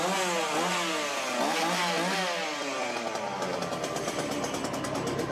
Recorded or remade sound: recorded